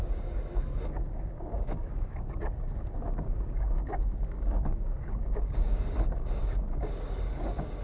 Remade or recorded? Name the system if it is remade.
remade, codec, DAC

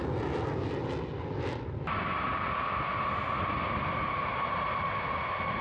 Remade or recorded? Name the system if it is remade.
recorded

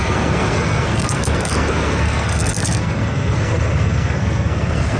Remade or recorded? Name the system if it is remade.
remade, codec, SNAC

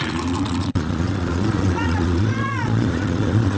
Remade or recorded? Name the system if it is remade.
remade, vocoder, Vocos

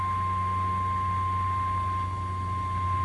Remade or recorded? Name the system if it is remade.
recorded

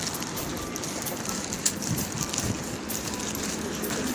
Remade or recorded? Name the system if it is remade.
recorded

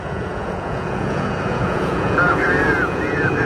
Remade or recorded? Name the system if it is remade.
remade, vocoder, Vocos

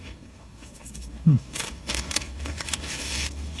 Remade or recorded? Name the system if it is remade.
remade, codec, DAC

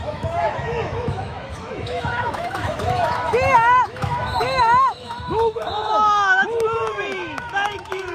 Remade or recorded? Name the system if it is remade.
remade, autoencoder, DAC-VAE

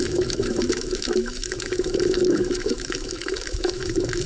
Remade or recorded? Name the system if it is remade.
remade, autoencoder, DAC-VAE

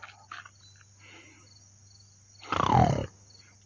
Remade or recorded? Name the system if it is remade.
recorded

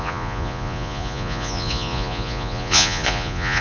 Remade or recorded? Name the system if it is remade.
remade, vocoder, Vocos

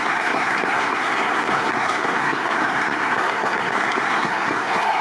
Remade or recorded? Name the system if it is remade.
remade, codec, SNAC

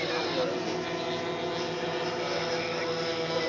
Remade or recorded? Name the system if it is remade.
recorded